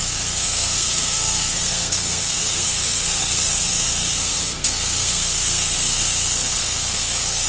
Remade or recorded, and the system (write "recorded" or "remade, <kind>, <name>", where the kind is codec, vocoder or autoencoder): remade, codec, SNAC